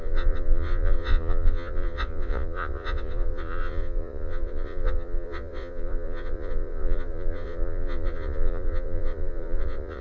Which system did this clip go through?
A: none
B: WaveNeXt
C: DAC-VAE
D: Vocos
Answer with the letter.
D